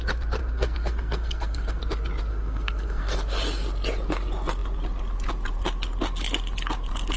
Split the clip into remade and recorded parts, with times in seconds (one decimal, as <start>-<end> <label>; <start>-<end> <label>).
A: 0.0-0.4 recorded; 0.4-1.8 remade; 1.8-2.3 recorded; 2.3-3.2 remade; 3.2-7.2 recorded